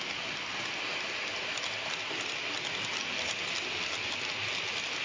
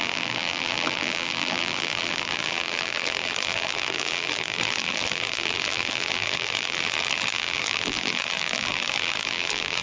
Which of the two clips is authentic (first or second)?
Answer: first